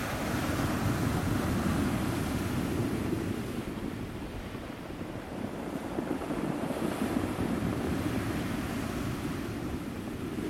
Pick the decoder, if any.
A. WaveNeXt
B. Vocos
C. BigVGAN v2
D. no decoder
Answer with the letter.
C